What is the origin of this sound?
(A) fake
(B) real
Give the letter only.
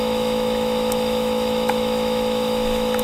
A